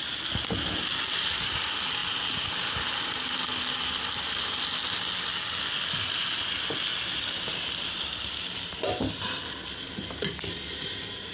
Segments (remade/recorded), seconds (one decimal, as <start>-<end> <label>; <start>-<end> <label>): 0.0-11.3 recorded